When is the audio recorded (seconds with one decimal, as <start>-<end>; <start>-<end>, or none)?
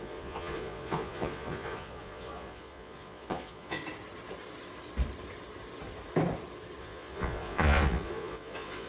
3.8-6.8